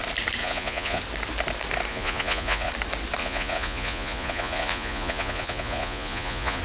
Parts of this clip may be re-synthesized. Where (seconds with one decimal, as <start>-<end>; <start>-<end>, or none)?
0.4-1.0; 1.9-2.7; 3.2-6.6